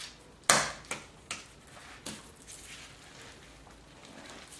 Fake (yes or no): no